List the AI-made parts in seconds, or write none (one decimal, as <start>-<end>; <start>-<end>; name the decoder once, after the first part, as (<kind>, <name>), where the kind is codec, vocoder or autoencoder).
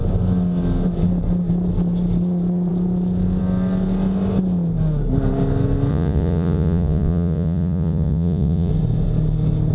5.9-8.7 (vocoder, Vocos)